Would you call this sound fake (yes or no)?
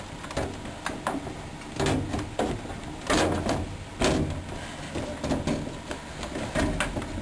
no